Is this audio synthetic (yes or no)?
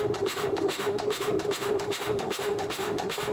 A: yes